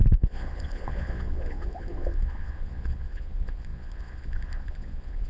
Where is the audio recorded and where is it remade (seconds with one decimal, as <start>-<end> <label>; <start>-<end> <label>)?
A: 0.0-5.3 remade